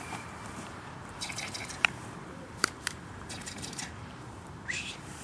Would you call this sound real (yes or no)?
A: no